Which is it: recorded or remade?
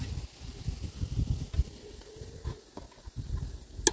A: recorded